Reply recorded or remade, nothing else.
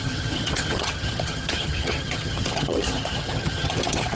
remade